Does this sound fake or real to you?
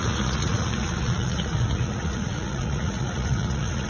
fake